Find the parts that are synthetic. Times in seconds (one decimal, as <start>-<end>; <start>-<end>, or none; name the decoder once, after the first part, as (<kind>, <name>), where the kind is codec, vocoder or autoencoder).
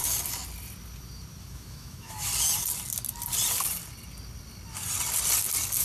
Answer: 1.4-2.3 (autoencoder, DAC-VAE)